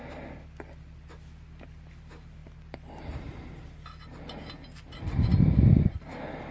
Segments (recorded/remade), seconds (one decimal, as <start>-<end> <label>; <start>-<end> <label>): 0.0-2.4 recorded; 2.4-4.2 remade; 4.2-6.5 recorded